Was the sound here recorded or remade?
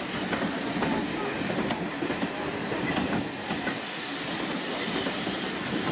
recorded